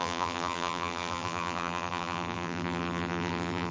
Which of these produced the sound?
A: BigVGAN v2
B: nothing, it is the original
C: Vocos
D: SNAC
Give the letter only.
A